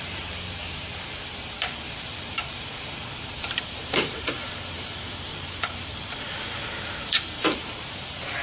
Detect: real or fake fake